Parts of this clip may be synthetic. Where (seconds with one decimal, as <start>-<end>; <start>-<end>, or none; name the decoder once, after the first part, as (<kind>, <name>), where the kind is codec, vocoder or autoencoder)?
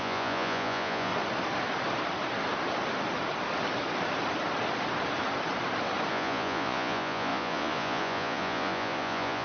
0.0-1.1 (vocoder, Vocos); 6.1-9.4